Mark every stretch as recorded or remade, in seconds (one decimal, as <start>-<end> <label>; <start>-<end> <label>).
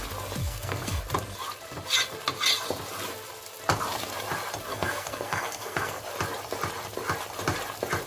0.0-0.4 recorded; 0.4-1.0 remade; 1.0-4.7 recorded; 4.7-6.0 remade; 6.0-8.1 recorded